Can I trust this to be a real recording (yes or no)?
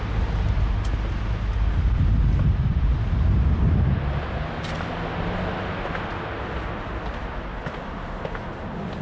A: yes